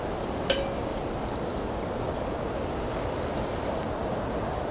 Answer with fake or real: real